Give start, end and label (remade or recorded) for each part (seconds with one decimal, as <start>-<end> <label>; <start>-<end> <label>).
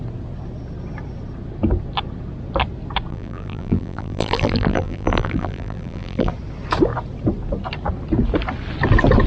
0.0-3.1 recorded; 3.1-6.3 remade; 6.3-9.3 recorded